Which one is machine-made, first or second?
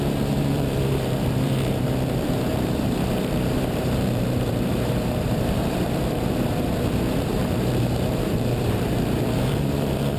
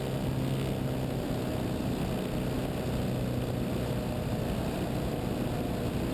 first